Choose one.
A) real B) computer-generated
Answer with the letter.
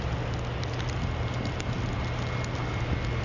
A